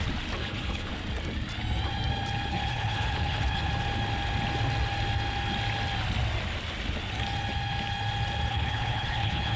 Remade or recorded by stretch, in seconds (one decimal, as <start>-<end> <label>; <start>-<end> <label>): 0.0-0.4 recorded; 0.4-0.9 remade; 0.9-2.5 recorded; 2.5-3.7 remade; 3.7-8.5 recorded; 8.5-9.6 remade